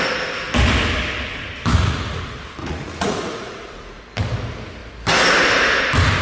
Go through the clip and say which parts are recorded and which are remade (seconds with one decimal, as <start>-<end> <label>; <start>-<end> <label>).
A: 0.0-1.7 recorded; 1.7-2.2 remade; 2.2-2.6 recorded; 2.6-4.0 remade; 4.0-6.2 recorded